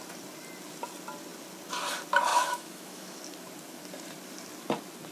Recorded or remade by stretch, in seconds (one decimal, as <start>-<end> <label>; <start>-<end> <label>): 0.0-2.3 recorded; 2.3-3.2 remade; 3.2-5.1 recorded